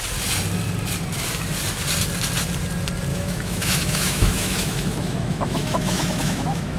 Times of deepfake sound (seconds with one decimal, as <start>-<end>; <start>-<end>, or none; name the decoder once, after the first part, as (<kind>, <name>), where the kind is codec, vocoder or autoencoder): 3.1-6.8 (autoencoder, DAC-VAE)